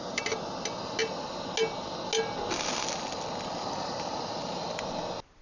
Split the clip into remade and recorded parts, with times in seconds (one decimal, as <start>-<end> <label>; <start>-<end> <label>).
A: 0.0-5.4 recorded